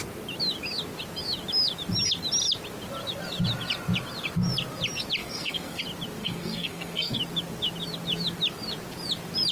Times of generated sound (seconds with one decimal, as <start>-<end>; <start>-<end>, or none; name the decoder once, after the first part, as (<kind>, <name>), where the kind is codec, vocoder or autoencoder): 5.2-5.8 (codec, SNAC); 6.2-7.2